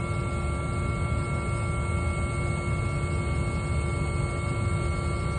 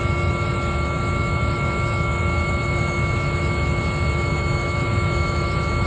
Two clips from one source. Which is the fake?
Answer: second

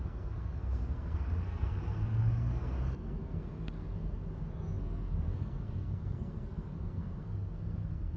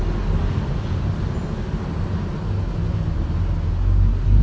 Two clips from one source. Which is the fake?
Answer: first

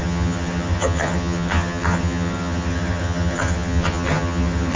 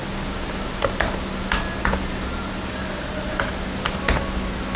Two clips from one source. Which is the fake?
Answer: first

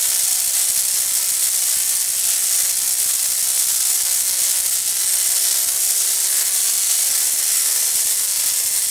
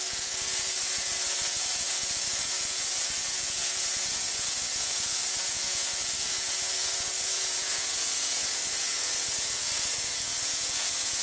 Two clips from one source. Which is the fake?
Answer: second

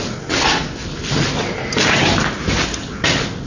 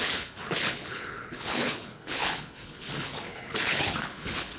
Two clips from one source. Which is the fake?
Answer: second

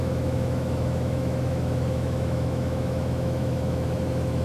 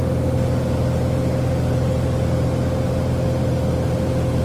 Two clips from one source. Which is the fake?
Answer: first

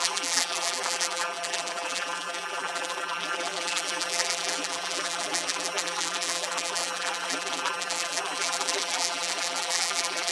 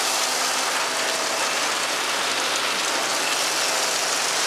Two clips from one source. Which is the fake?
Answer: first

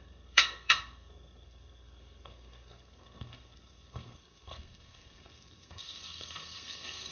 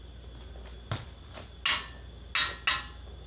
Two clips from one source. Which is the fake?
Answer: first